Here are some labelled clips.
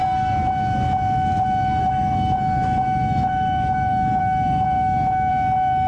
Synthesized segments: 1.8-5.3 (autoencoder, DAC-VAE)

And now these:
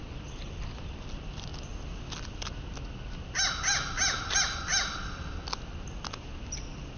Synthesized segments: none

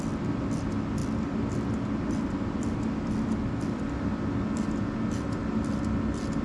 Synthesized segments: none

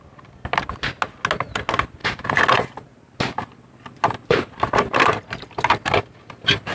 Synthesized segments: none

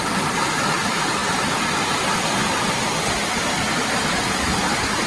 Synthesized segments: none

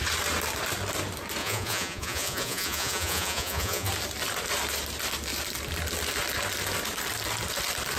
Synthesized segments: 1.4-3.9 (vocoder, Vocos)

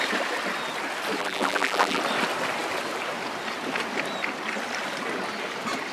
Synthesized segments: 1.2-2.0 (vocoder, BigVGAN v2)